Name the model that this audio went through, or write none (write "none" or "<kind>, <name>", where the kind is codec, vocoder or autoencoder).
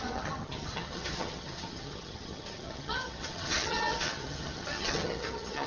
vocoder, HiFi-GAN